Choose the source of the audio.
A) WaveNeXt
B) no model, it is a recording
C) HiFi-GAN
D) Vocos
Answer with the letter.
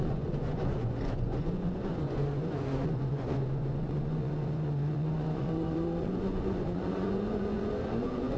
D